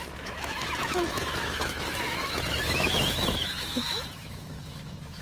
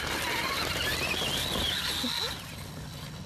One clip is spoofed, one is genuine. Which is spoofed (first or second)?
first